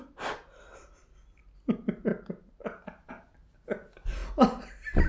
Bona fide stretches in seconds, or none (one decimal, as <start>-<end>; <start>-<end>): 0.0-5.1